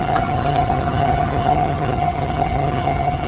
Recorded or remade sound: remade